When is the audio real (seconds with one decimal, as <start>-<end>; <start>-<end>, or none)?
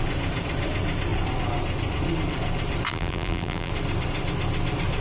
0.0-2.9; 3.7-5.0